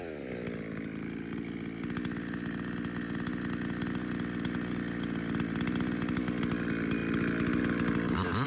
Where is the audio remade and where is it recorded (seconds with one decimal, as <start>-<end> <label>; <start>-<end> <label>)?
0.0-8.5 recorded